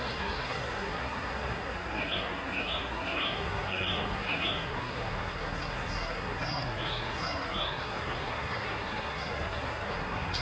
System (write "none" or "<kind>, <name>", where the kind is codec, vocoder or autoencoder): codec, SNAC